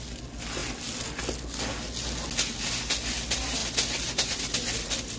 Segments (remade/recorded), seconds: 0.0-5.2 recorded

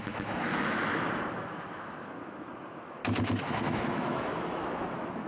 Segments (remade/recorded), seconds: 0.0-3.0 remade; 3.0-3.7 recorded; 3.7-5.3 remade

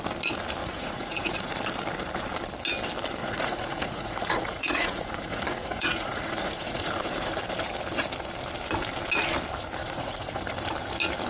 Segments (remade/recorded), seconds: 0.0-0.6 recorded; 0.6-1.6 remade; 1.6-3.2 recorded; 3.2-7.4 remade; 7.4-9.8 recorded; 9.8-10.4 remade; 10.4-11.3 recorded